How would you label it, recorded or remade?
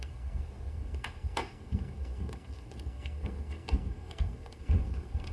remade